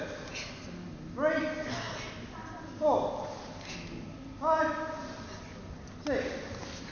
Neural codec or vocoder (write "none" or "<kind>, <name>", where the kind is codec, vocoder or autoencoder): none